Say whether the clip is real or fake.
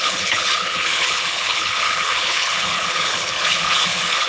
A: fake